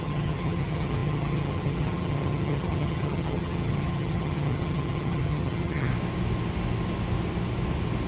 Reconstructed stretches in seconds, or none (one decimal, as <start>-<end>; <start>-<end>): 0.0-5.9

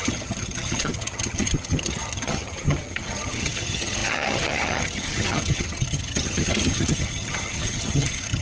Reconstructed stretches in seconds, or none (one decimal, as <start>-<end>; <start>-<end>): 0.0-8.4

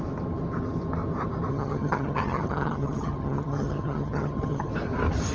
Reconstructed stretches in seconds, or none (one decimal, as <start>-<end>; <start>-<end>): 1.5-4.7

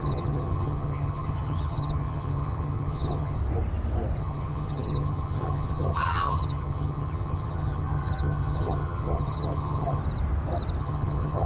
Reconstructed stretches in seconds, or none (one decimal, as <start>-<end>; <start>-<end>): 0.0-3.4; 4.2-10.0; 10.8-11.5

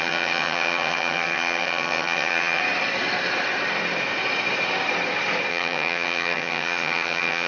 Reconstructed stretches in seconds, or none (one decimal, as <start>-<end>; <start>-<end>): 0.0-2.6; 5.5-7.5

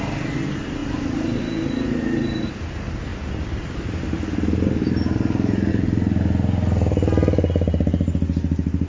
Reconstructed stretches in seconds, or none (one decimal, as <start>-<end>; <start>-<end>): none

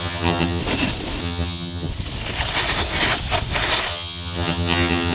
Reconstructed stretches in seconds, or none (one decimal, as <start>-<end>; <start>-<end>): 0.0-0.6; 1.2-1.9; 3.9-5.1

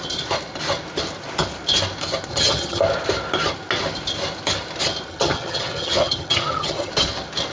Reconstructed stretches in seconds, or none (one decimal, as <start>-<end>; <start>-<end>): 2.3-2.8; 5.1-6.9